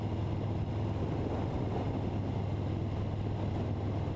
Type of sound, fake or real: real